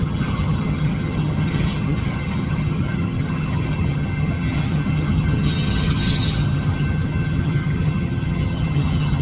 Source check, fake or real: fake